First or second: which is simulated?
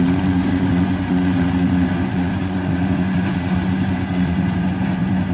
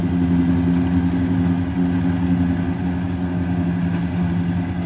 first